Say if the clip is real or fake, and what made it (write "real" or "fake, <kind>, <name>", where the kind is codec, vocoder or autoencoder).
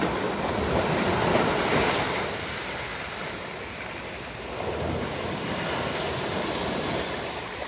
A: real